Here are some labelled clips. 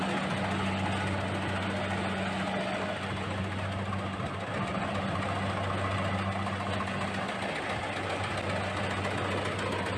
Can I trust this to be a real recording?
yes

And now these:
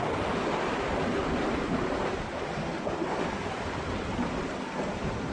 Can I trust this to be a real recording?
yes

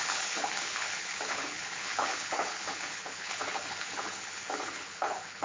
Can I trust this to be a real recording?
no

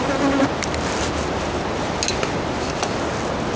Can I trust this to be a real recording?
yes